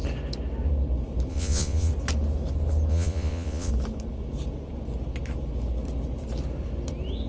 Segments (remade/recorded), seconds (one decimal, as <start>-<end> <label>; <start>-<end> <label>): 0.0-1.3 recorded; 1.3-1.9 remade; 1.9-2.9 recorded; 2.9-3.7 remade; 3.7-7.3 recorded